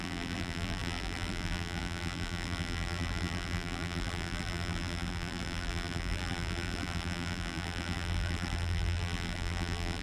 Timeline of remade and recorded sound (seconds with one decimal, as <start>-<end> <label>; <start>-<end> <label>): 0.0-10.0 remade

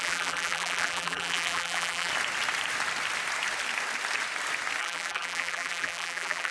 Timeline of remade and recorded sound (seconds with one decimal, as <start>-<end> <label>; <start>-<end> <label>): 0.0-2.1 remade; 2.1-4.8 recorded; 4.8-6.5 remade

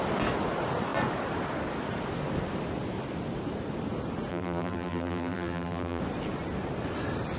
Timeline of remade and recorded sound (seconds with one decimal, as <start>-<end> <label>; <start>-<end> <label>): 0.0-4.3 recorded; 4.3-6.0 remade; 6.0-7.4 recorded

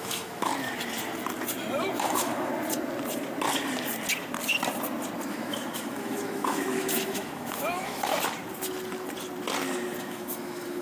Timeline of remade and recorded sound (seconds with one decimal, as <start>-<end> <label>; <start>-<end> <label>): 0.0-0.5 remade; 0.5-2.0 recorded; 2.0-2.5 remade; 2.5-5.3 recorded; 5.3-8.1 remade; 8.1-10.0 recorded; 10.0-10.8 remade

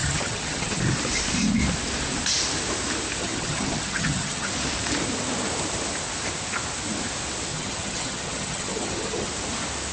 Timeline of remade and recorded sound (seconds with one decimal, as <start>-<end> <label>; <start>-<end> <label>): 0.0-0.8 remade; 0.8-3.2 recorded; 3.2-4.5 remade; 4.5-7.5 recorded; 7.5-9.3 remade; 9.3-9.9 recorded